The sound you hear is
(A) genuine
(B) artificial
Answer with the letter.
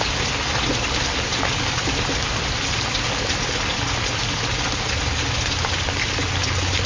A